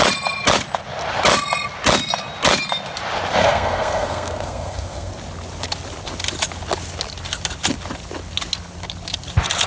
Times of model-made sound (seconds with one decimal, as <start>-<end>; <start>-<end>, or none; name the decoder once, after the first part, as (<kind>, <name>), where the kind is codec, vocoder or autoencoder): 3.4-5.1 (codec, SNAC)